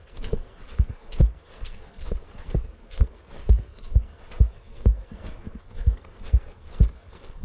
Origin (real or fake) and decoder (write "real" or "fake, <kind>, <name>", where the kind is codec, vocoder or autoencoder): fake, codec, SNAC